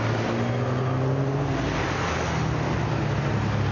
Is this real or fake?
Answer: real